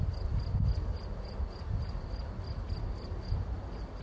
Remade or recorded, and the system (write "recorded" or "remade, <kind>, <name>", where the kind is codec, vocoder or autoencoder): recorded